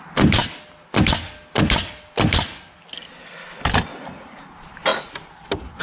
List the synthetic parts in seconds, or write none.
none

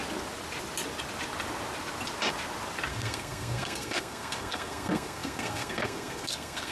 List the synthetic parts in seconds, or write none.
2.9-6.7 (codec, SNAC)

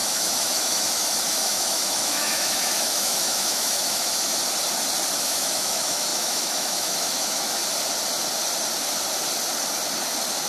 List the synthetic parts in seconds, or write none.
0.0-4.4 (autoencoder, DAC-VAE); 5.2-7.6